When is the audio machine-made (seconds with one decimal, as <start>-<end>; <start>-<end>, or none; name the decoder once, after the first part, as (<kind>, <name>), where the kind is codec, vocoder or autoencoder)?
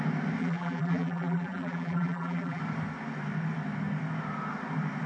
0.4-2.6 (vocoder, BigVGAN v2)